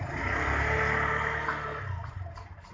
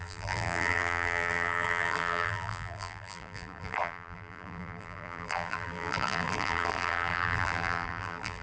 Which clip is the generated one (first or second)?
second